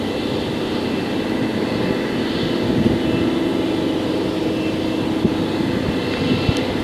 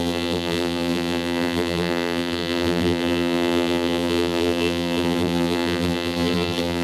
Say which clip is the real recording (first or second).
first